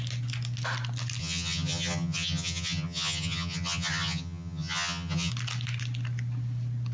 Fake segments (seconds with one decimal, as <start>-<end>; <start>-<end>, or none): 1.2-5.3